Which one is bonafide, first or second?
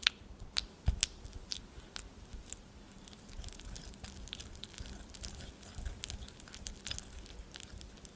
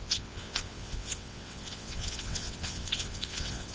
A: first